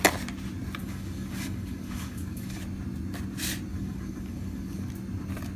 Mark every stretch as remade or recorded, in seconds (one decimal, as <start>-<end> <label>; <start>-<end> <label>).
0.0-0.8 recorded; 0.8-2.6 remade; 2.6-3.7 recorded; 3.7-4.9 remade; 4.9-5.6 recorded

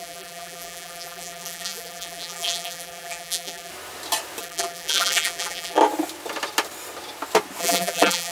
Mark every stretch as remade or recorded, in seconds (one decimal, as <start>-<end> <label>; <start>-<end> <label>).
0.0-3.7 remade; 3.7-4.4 recorded; 4.4-5.8 remade; 5.8-7.6 recorded; 7.6-8.3 remade